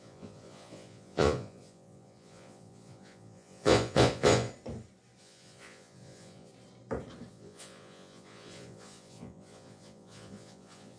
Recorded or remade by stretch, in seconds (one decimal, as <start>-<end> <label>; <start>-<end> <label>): 0.0-4.5 remade; 4.5-5.2 recorded; 5.2-6.5 remade; 6.5-7.3 recorded; 7.3-11.0 remade